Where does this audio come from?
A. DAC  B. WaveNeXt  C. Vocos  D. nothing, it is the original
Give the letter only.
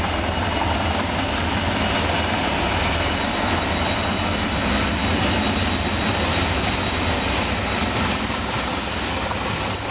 D